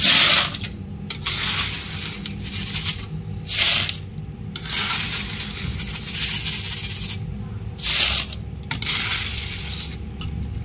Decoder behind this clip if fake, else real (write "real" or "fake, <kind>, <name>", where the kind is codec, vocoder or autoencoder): real